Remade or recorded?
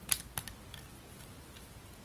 recorded